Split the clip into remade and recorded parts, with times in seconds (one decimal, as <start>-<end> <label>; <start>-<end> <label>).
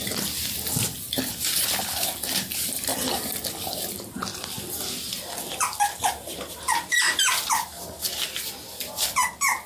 0.0-4.3 recorded; 4.3-6.6 remade; 6.6-9.7 recorded